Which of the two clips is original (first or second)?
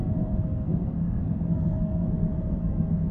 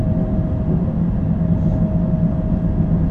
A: second